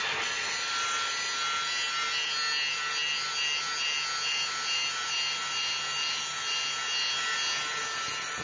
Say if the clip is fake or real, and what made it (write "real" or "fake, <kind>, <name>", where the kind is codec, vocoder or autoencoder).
real